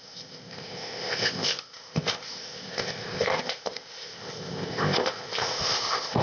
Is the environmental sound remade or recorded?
remade